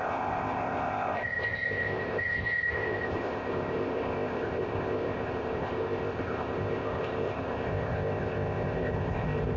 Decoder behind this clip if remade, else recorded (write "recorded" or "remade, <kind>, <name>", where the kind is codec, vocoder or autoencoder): remade, codec, ZipCodec